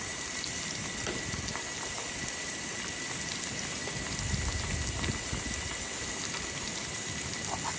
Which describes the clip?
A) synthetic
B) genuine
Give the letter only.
B